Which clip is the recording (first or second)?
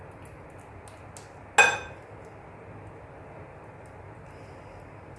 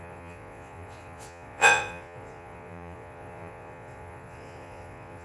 first